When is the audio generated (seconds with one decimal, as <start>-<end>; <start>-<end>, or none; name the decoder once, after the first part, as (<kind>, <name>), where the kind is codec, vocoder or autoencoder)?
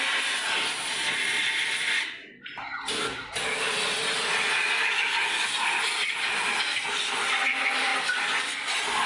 none